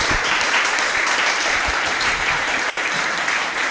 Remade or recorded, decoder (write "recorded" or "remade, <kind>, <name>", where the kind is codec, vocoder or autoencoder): remade, vocoder, BigVGAN v2